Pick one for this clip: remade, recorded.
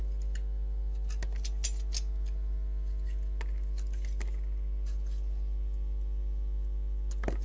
recorded